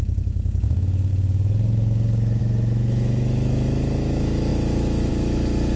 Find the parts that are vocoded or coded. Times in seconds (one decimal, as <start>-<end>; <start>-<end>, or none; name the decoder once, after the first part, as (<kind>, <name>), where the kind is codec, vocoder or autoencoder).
0.0-5.8 (autoencoder, DAC-VAE)